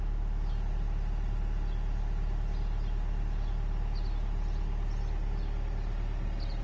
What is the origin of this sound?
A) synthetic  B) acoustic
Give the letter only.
B